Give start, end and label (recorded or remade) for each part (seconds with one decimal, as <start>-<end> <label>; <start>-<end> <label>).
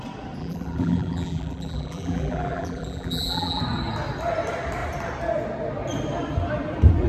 0.0-0.4 recorded; 0.4-3.6 remade; 3.6-7.1 recorded